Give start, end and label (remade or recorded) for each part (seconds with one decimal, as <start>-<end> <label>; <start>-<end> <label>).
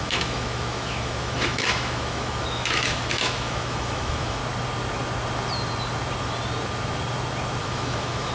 0.0-4.4 remade; 4.4-7.6 recorded; 7.6-8.3 remade